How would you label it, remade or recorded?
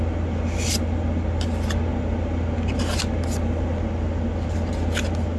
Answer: recorded